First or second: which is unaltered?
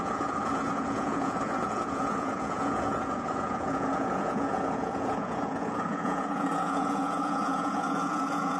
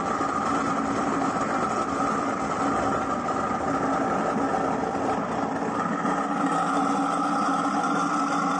second